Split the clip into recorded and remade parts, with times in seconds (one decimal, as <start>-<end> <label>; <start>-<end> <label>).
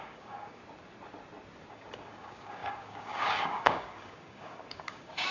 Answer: 0.0-0.6 remade; 0.6-1.7 recorded; 1.7-5.3 remade